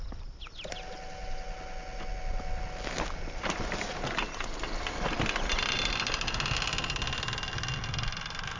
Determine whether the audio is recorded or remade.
recorded